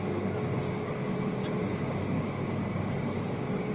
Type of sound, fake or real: fake